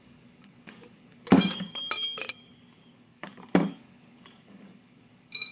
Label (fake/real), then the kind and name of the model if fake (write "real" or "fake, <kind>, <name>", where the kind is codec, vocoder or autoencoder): fake, codec, DAC